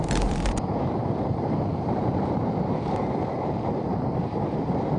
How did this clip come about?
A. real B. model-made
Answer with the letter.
B